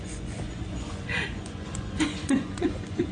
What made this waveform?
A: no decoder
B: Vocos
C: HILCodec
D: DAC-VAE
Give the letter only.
B